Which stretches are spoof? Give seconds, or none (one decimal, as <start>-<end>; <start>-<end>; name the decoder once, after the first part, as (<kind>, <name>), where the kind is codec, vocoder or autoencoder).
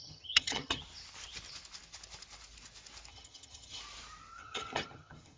0.0-0.8 (vocoder, HiFi-GAN); 3.1-3.8; 4.4-5.4